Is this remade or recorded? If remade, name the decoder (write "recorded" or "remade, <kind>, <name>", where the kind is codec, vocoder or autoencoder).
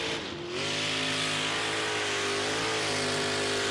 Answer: recorded